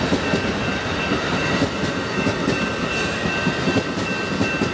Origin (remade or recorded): recorded